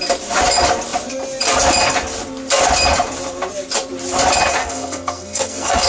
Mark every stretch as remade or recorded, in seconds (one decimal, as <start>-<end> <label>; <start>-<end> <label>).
0.0-4.6 recorded; 4.6-5.9 remade